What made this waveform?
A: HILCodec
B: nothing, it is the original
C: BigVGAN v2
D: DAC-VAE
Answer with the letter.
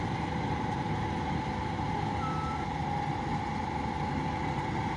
B